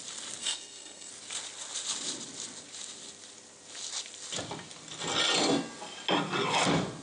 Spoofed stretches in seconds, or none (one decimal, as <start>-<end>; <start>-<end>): 0.4-1.1